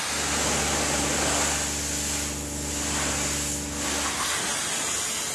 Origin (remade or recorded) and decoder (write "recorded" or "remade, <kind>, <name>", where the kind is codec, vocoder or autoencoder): recorded